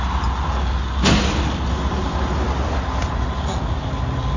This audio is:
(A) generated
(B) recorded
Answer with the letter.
B